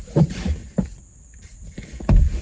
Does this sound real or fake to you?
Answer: fake